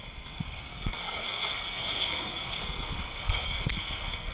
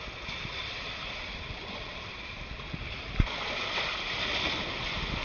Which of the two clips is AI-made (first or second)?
first